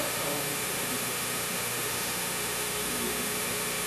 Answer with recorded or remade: remade